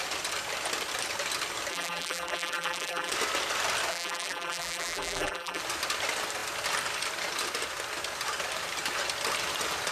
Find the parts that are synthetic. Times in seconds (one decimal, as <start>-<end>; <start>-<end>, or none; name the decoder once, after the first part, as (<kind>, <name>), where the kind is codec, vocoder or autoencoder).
1.7-3.1 (vocoder, BigVGAN v2); 3.9-5.6